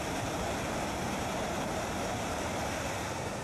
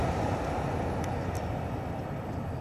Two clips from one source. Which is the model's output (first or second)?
first